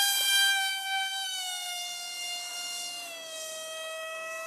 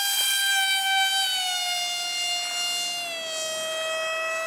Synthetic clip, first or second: first